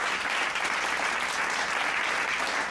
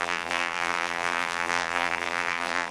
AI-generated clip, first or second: second